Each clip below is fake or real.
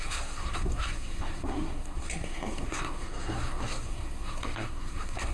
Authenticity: fake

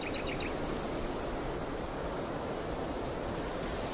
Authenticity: real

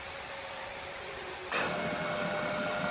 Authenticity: real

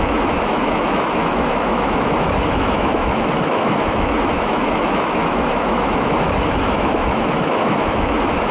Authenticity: fake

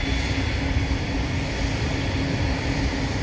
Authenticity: real